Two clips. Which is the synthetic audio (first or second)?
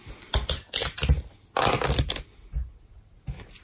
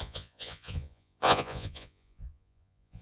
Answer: second